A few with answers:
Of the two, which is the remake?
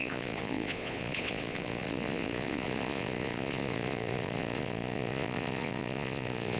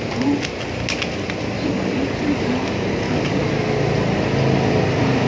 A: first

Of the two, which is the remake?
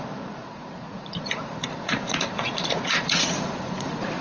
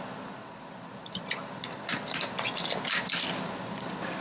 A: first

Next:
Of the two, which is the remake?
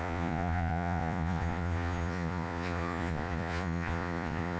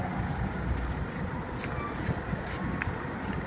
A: first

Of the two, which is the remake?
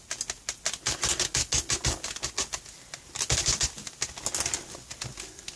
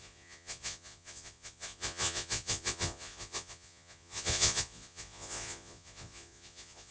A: second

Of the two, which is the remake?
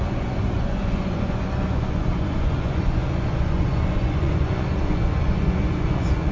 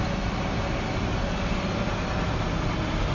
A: first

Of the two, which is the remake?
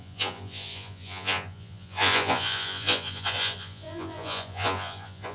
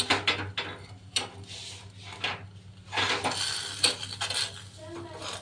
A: first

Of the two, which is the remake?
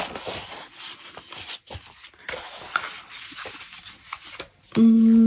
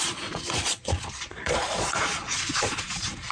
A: second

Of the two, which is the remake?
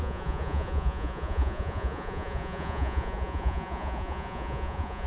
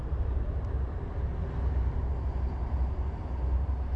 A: first